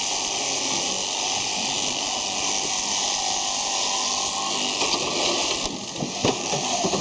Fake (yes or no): no